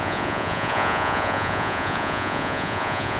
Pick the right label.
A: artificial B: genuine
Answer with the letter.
A